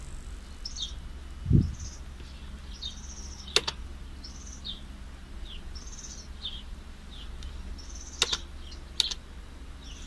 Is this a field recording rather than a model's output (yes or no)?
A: yes